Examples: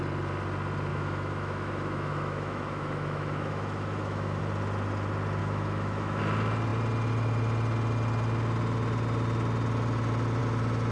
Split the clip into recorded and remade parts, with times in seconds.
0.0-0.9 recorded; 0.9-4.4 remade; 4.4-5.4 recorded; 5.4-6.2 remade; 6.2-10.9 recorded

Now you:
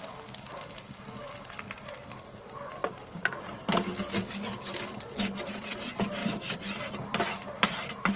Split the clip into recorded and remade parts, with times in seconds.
0.0-8.2 recorded